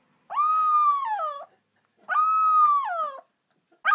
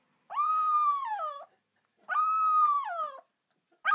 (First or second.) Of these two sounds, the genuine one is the first